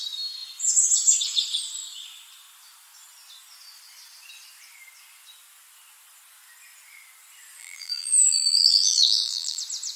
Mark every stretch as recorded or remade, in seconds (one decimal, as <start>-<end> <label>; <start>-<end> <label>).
0.0-7.6 recorded; 7.6-9.6 remade; 9.6-10.0 recorded